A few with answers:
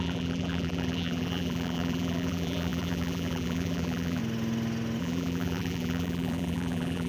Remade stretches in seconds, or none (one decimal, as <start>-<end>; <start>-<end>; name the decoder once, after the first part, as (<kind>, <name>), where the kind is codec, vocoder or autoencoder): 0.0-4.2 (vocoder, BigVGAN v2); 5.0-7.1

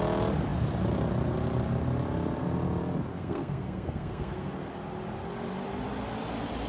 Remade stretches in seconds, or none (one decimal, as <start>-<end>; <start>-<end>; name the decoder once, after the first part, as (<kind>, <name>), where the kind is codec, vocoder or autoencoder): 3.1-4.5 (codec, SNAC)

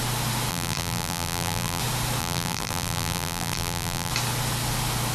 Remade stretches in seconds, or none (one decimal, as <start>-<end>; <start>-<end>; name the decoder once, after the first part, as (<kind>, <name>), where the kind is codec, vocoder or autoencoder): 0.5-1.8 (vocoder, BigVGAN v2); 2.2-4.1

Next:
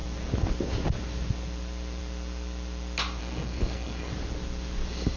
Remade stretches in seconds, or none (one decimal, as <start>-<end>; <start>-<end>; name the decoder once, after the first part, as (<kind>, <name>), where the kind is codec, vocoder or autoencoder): 3.2-4.1 (codec, SNAC)

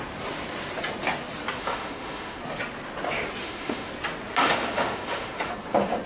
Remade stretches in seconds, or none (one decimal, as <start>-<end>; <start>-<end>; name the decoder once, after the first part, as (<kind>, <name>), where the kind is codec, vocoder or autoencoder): 1.6-2.4 (autoencoder, DAC-VAE); 3.4-3.9; 4.4-5.5